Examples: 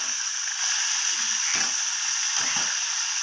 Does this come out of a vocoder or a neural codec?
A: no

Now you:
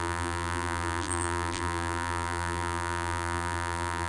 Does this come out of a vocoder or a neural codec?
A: yes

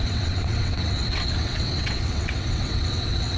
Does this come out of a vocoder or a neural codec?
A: yes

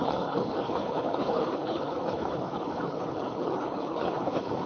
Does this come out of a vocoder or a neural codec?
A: yes